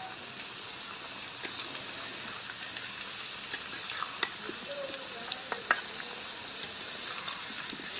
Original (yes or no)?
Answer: yes